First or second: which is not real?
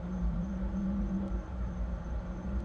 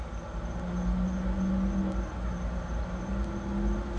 first